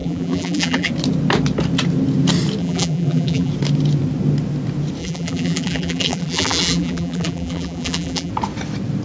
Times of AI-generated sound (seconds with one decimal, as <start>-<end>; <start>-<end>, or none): 0.0-0.9; 2.6-3.5; 5.0-8.3